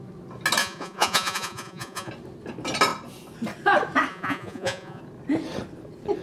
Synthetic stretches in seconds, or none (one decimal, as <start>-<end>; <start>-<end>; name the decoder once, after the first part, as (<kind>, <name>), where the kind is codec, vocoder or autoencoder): 0.6-2.1 (vocoder, Vocos); 4.1-5.0